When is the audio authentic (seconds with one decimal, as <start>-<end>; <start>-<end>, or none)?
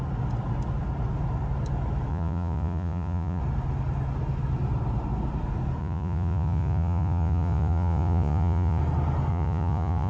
0.0-2.1; 3.4-5.8; 8.8-9.3